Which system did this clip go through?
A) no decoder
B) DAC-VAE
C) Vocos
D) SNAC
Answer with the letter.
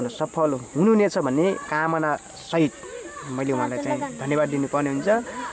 A